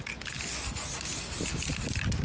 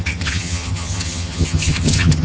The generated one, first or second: second